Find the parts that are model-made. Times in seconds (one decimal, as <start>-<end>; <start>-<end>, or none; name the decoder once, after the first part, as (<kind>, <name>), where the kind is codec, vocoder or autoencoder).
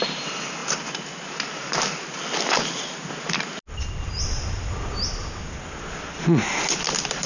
none